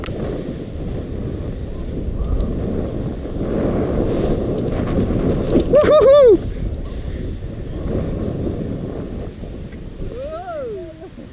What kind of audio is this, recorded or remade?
recorded